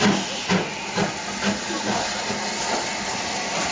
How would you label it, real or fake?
real